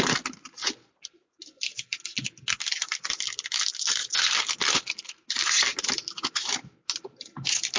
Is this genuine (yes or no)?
yes